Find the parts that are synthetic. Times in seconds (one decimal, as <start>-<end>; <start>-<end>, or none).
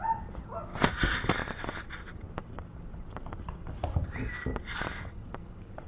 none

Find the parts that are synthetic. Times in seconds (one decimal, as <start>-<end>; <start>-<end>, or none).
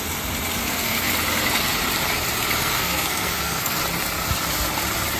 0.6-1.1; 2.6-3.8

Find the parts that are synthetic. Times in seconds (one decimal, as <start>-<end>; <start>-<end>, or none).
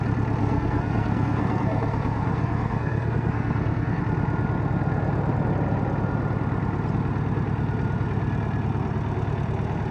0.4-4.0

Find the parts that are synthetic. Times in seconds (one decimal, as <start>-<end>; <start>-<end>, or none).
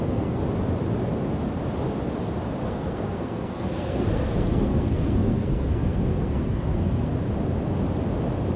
0.0-0.4; 2.6-7.1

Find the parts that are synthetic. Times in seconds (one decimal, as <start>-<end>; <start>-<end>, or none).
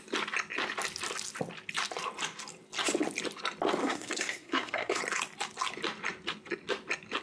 3.8-5.0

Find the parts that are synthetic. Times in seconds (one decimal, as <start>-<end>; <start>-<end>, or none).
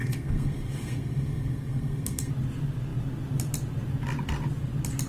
0.0-2.3